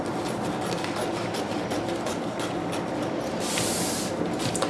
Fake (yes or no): no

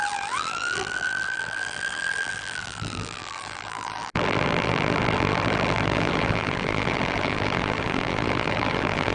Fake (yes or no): yes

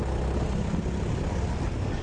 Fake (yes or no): no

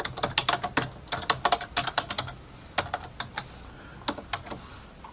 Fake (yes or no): no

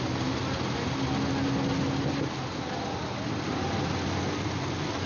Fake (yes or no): no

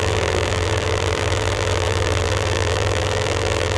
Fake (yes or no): yes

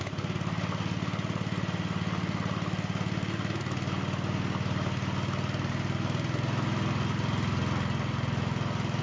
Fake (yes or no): no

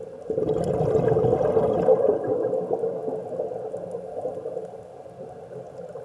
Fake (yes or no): no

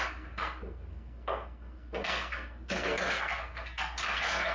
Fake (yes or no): yes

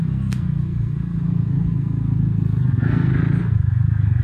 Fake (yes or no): yes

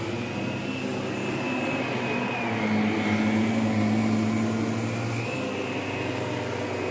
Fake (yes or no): no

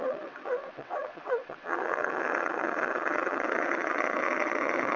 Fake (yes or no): yes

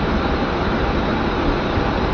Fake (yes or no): no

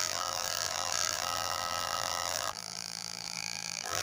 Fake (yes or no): yes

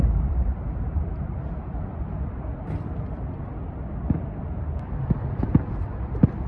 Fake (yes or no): yes